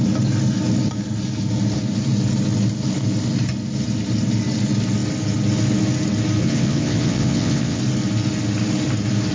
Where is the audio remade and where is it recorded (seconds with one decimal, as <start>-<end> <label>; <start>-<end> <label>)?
0.0-6.4 recorded; 6.4-7.8 remade; 7.8-9.3 recorded